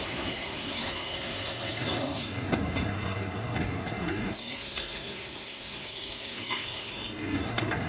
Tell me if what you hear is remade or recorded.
remade